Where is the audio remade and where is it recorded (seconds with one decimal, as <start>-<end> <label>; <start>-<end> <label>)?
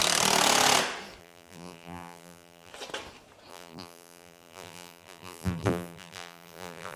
0.0-1.2 recorded; 1.2-2.7 remade; 2.7-3.5 recorded; 3.5-7.0 remade